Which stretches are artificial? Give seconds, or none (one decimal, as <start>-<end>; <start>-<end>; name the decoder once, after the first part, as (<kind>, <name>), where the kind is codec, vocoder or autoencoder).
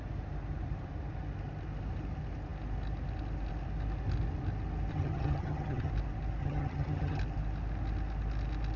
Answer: 4.9-5.9 (vocoder, HiFi-GAN); 6.4-7.2